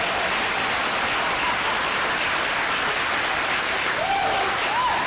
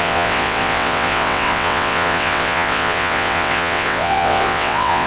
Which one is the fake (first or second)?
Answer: second